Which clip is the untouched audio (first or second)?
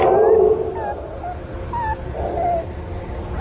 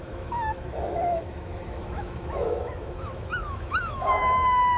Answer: first